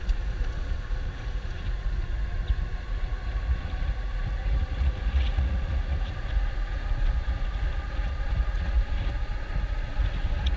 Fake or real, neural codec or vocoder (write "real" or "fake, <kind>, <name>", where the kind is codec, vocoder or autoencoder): fake, vocoder, Vocos